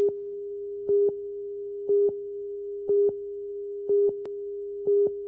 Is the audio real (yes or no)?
no